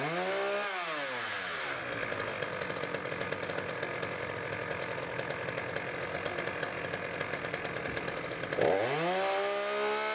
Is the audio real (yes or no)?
yes